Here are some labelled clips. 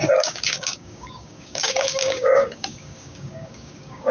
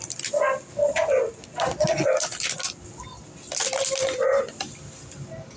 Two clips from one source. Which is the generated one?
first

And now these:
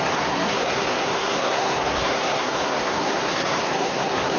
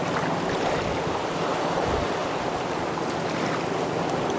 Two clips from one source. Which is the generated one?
first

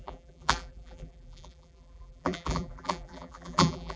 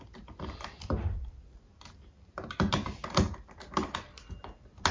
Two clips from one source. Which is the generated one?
first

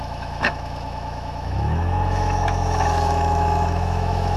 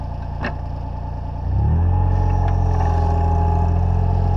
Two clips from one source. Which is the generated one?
first